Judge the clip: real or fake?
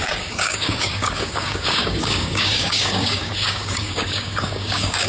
fake